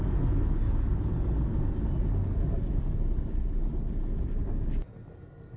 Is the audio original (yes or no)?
yes